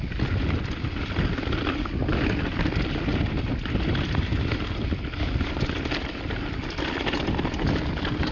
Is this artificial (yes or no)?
no